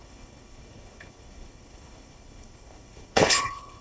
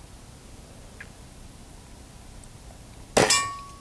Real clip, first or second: second